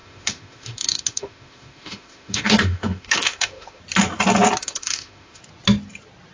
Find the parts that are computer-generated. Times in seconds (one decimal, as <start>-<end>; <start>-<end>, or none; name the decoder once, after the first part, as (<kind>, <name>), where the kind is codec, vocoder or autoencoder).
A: 0.0-3.8 (autoencoder, DAC-VAE); 4.6-5.4